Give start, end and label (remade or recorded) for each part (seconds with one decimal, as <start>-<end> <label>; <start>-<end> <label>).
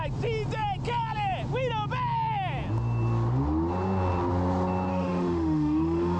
0.0-4.9 recorded; 4.9-6.2 remade